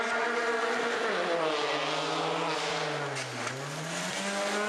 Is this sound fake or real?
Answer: real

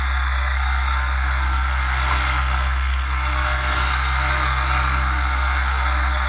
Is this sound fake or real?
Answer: fake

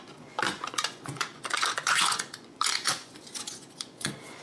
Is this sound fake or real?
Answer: fake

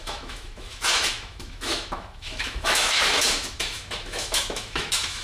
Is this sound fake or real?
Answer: fake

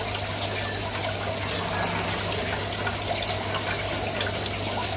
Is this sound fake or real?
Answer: real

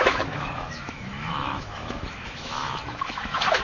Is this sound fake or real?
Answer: fake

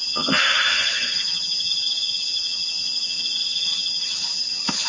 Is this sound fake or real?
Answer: fake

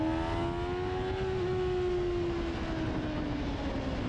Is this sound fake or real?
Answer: real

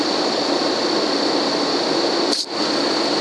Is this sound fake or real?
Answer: real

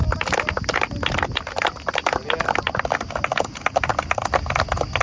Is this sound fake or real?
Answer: real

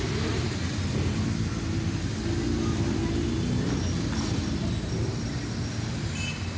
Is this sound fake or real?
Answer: real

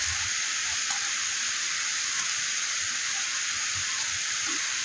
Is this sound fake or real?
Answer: fake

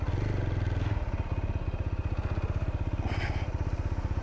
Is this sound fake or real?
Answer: real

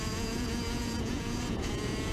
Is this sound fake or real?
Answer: fake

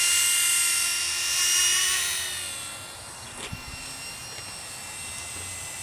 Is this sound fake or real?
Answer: real